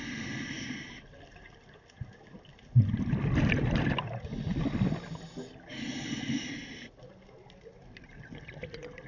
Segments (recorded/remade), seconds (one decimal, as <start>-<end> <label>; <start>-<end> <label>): 0.0-9.1 recorded